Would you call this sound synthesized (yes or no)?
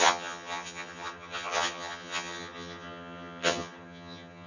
yes